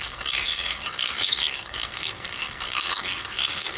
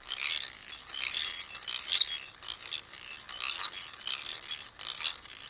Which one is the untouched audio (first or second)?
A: second